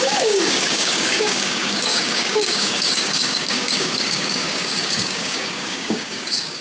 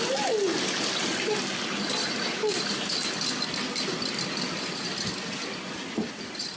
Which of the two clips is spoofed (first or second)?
first